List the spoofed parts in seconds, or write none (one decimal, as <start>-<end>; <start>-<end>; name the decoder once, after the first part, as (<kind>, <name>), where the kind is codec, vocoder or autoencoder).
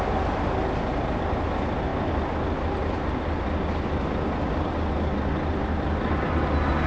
none